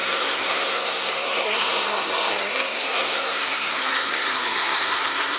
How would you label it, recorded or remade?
remade